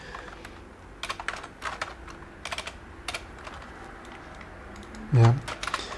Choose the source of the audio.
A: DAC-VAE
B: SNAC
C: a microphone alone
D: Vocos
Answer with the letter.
C